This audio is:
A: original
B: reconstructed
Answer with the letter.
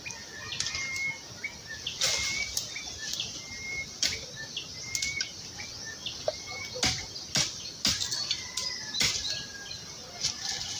A